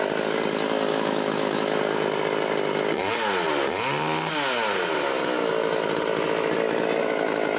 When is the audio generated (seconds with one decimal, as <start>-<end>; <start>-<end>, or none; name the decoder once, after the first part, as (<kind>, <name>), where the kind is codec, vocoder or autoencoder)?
0.9-1.8 (autoencoder, DAC-VAE)